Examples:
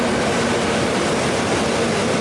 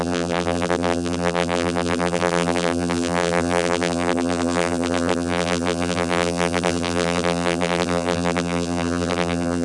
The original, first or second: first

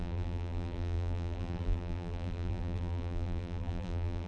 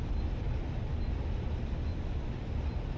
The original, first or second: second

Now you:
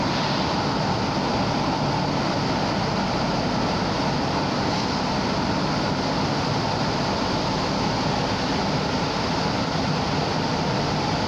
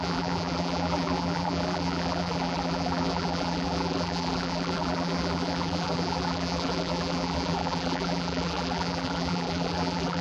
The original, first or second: first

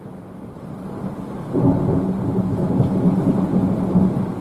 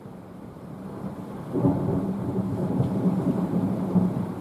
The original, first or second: first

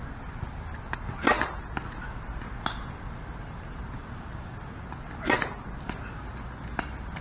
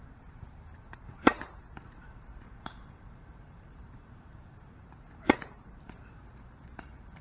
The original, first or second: first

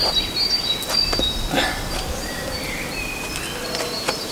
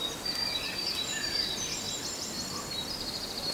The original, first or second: first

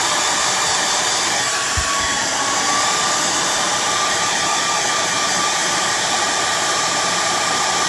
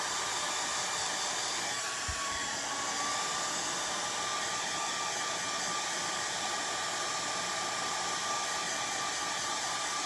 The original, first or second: second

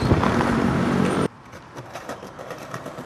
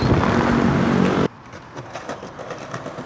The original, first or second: second